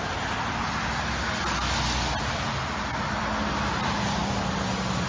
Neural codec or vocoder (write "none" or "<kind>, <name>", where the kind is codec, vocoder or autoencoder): none